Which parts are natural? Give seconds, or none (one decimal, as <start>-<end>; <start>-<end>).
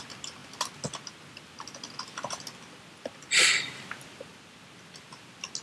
0.0-5.6